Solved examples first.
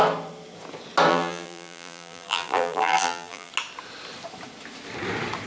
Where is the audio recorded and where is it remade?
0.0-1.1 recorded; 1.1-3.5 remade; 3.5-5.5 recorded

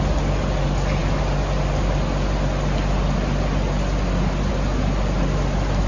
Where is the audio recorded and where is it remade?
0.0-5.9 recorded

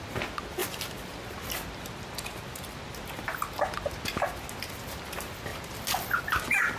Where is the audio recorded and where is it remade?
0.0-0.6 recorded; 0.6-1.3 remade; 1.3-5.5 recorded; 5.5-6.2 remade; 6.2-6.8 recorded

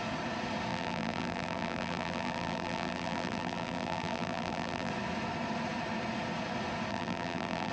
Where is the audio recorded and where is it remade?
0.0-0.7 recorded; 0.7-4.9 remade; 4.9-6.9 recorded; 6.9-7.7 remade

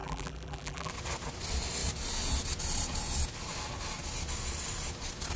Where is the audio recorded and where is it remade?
0.0-0.9 remade; 0.9-5.4 recorded

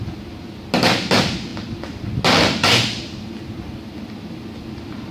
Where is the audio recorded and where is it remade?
0.0-5.1 recorded

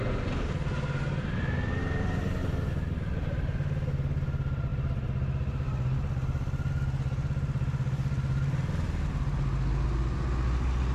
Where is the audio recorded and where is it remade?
0.0-10.9 recorded